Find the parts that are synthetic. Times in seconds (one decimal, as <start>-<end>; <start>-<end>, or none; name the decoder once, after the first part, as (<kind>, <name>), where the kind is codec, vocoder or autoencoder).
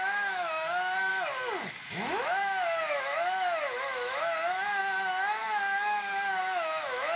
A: 0.0-1.1 (autoencoder, DAC-VAE); 1.7-7.2